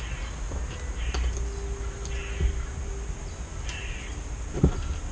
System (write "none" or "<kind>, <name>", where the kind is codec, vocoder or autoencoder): none